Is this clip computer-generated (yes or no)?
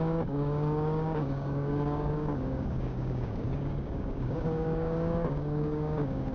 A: yes